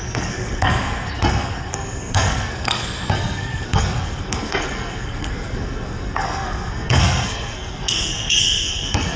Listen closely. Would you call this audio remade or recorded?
remade